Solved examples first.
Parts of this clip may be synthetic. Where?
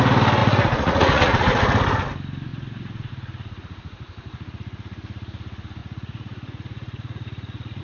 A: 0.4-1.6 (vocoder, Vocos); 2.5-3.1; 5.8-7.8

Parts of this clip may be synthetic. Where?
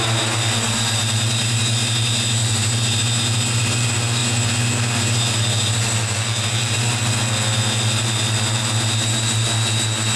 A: none